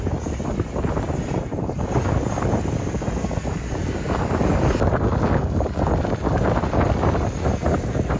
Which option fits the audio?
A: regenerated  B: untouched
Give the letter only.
B